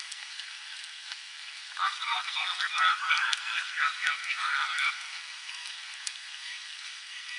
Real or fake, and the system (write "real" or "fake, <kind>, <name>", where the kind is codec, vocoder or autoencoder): fake, codec, SNAC